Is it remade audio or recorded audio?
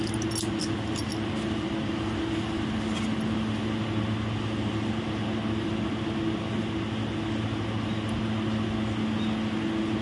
recorded